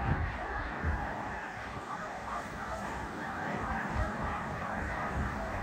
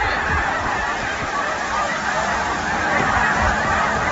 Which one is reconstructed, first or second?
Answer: first